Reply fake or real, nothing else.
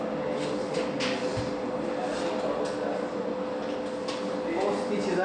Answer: real